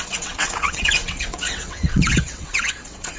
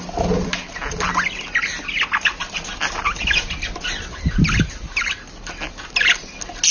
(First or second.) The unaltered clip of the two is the second